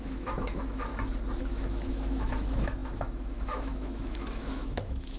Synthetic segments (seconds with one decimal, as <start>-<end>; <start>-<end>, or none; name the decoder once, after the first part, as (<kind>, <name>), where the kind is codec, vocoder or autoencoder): 0.0-0.9 (autoencoder, DAC-VAE); 1.4-5.2